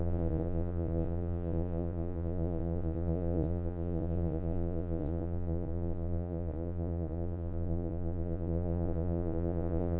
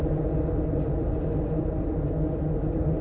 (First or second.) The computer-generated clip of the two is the first